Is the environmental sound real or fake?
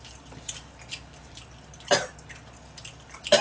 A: real